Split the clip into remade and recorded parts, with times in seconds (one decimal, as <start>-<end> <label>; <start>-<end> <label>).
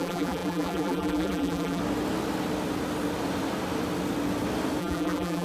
0.0-1.8 remade; 1.8-4.8 recorded; 4.8-5.4 remade